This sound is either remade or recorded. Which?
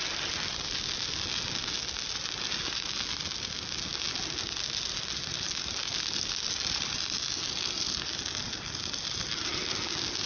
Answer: recorded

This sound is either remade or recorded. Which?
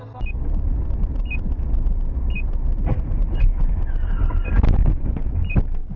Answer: recorded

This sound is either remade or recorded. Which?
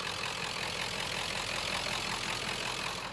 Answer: recorded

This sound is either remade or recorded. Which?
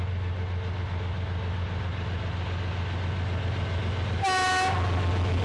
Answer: recorded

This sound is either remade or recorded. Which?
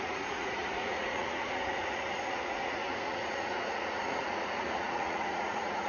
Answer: remade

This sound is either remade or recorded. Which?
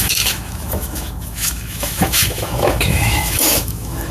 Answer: remade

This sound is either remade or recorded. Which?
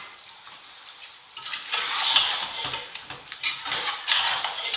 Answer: recorded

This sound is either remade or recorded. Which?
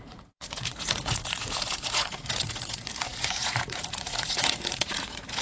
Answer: remade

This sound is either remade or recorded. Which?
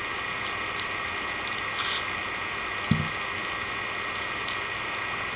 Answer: recorded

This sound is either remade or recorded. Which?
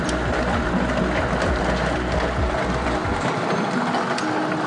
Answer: recorded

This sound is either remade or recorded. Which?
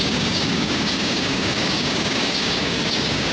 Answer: remade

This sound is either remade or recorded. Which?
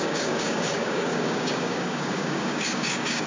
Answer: remade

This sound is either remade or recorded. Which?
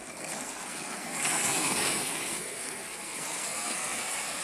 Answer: remade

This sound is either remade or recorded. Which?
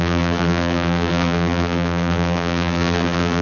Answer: remade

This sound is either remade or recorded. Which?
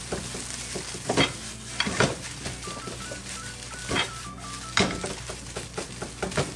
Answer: recorded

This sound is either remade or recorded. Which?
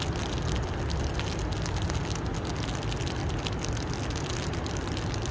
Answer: recorded